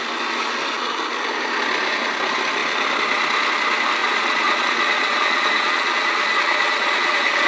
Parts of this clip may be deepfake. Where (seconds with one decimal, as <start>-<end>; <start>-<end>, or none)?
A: 4.0-7.5